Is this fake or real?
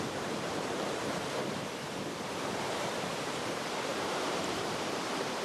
fake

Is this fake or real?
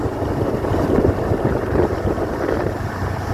real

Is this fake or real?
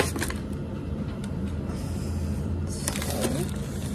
fake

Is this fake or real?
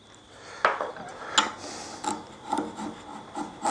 real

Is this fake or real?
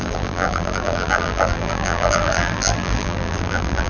fake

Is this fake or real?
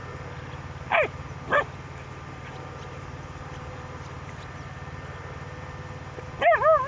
real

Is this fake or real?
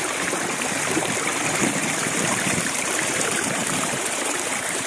fake